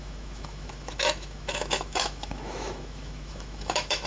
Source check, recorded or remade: remade